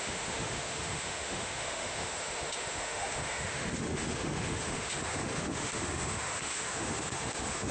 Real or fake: fake